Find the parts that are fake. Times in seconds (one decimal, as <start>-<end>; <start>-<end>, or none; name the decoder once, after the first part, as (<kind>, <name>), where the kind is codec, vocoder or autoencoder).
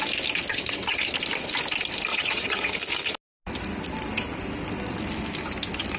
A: 0.5-1.1 (vocoder, HiFi-GAN); 2.1-2.8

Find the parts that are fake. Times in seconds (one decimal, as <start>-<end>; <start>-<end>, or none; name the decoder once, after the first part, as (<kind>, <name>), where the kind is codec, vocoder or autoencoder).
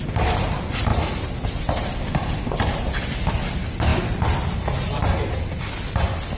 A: none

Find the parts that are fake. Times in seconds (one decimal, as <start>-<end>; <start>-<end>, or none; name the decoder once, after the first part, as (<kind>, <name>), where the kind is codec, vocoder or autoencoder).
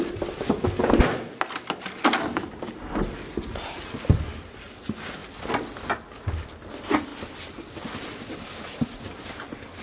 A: none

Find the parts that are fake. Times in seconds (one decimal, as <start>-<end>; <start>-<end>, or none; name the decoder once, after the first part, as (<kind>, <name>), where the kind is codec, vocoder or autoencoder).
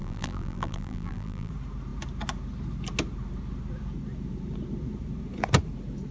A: 0.0-1.5 (vocoder, BigVGAN v2)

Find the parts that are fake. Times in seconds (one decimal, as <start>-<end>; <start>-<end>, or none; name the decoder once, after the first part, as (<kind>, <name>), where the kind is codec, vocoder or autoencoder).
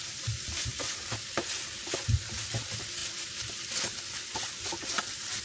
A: none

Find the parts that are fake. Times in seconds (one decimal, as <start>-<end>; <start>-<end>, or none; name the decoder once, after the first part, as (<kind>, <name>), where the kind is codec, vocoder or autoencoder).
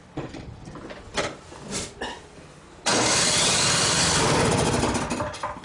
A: 0.0-2.2 (vocoder, BigVGAN v2); 2.9-4.7